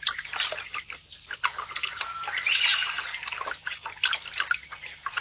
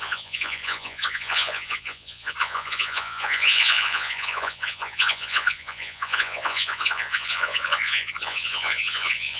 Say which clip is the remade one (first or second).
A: second